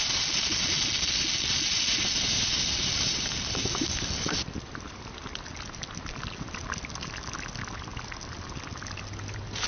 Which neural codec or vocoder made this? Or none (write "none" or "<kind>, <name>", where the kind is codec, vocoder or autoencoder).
none